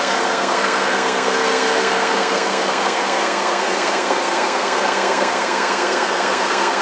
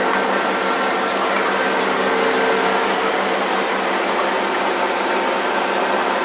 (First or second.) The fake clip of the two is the first